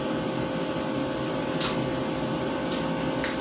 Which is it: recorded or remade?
recorded